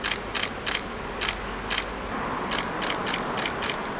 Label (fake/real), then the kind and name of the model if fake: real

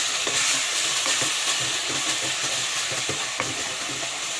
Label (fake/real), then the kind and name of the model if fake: real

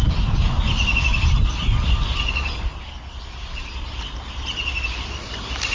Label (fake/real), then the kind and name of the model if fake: real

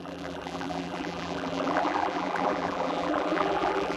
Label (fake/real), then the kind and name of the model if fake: fake, vocoder, BigVGAN v2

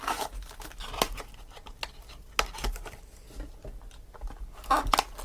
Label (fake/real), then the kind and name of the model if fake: real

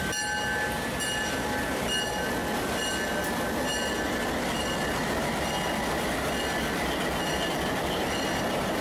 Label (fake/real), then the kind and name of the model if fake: real